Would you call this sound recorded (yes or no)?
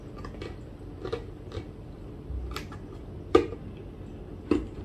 yes